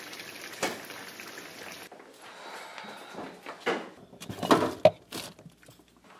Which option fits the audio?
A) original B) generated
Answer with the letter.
A